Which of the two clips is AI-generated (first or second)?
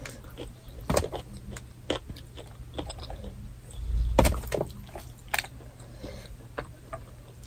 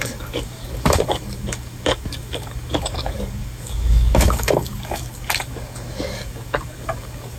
second